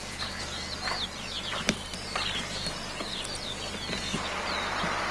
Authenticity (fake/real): real